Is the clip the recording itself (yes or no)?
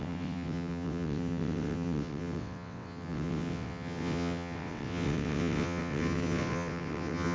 no